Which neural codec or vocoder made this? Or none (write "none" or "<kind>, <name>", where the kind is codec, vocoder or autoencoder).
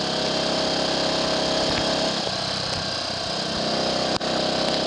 none